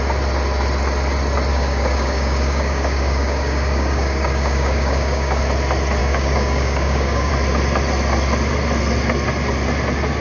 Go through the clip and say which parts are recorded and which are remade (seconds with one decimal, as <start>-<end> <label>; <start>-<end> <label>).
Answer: 0.0-1.5 recorded; 1.5-5.4 remade; 5.4-6.0 recorded; 6.0-7.3 remade; 7.3-10.2 recorded